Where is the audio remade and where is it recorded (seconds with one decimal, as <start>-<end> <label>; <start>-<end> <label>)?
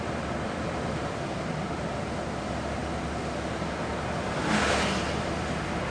0.0-2.8 remade; 2.8-3.9 recorded; 3.9-5.9 remade